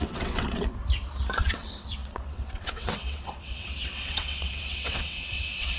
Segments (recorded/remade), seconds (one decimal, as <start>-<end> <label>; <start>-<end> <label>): 0.0-0.8 remade; 0.8-1.4 recorded; 1.4-5.8 remade